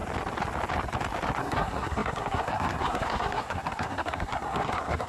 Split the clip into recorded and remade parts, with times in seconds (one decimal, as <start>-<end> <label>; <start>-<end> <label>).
0.0-1.4 recorded; 1.4-5.1 remade

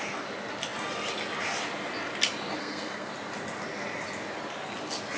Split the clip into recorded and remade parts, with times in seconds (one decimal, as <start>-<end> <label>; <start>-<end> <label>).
0.0-2.6 recorded; 2.6-3.1 remade; 3.1-5.2 recorded

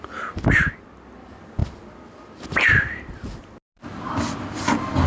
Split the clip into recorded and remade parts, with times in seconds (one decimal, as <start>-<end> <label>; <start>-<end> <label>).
0.0-5.1 recorded

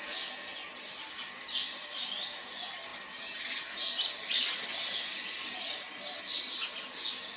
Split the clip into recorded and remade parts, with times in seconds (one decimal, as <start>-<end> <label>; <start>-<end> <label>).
0.0-7.4 recorded

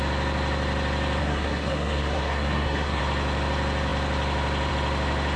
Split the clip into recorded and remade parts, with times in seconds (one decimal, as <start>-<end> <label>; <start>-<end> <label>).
0.0-1.2 recorded; 1.2-3.0 remade; 3.0-5.4 recorded